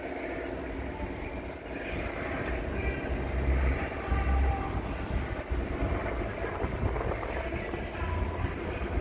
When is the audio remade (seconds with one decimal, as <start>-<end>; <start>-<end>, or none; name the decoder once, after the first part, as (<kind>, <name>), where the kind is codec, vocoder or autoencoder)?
none